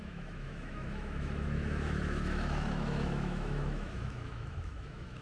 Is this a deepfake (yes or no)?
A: yes